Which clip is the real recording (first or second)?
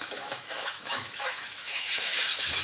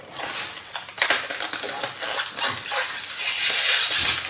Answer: second